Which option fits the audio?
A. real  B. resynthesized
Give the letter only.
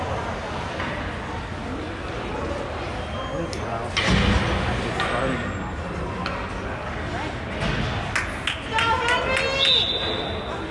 A